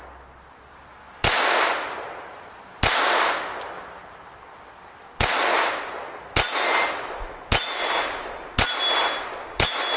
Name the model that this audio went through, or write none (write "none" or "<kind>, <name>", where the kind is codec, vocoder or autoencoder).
none